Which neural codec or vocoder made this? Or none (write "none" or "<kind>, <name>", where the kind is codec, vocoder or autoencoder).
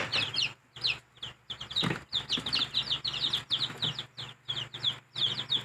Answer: none